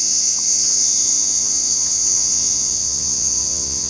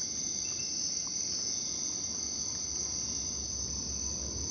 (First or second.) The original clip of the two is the second